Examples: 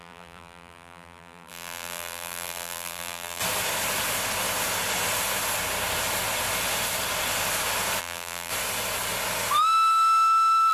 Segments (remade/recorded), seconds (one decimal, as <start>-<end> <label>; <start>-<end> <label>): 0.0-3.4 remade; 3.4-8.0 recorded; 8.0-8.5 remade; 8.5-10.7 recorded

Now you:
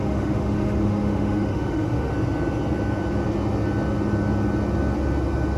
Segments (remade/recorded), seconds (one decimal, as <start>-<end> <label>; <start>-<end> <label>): 0.0-2.1 remade; 2.1-5.6 recorded

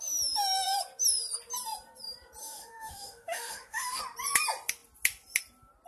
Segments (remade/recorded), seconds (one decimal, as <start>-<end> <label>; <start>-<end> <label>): 0.0-2.4 recorded; 2.4-4.0 remade; 4.0-5.9 recorded

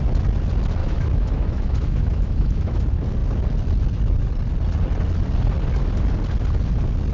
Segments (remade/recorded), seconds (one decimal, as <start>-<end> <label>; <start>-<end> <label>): 0.0-0.8 recorded; 0.8-2.8 remade; 2.8-7.1 recorded